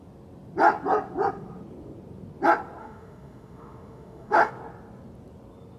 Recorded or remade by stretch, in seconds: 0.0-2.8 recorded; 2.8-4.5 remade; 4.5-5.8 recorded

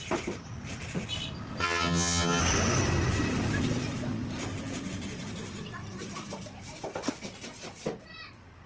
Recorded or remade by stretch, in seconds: 0.0-1.6 recorded; 1.6-2.4 remade; 2.4-8.7 recorded

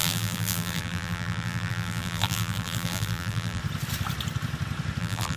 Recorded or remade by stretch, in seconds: 0.0-3.6 remade; 3.6-5.0 recorded; 5.0-5.4 remade

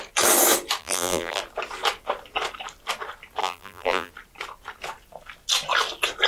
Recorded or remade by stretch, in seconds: 0.0-0.8 recorded; 0.8-1.4 remade; 1.4-3.4 recorded; 3.4-4.1 remade; 4.1-6.3 recorded

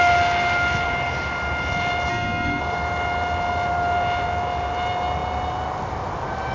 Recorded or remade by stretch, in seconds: 0.0-2.1 recorded; 2.1-2.6 remade; 2.6-6.5 recorded

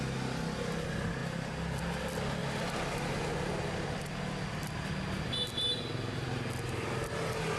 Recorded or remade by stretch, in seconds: 0.0-7.6 recorded